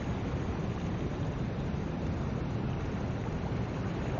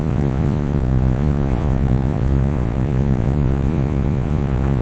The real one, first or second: first